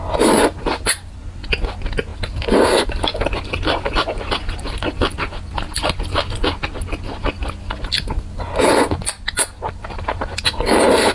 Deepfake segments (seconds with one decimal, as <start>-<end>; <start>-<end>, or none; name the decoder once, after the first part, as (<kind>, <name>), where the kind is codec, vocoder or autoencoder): none